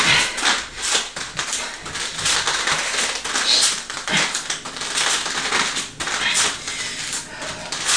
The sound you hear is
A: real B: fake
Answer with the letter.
A